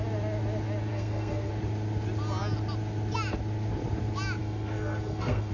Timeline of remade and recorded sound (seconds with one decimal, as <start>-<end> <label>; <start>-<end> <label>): 0.0-0.9 recorded; 0.9-1.5 remade; 1.5-4.4 recorded; 4.4-5.5 remade